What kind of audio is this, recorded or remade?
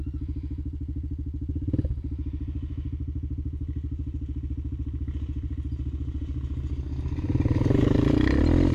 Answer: recorded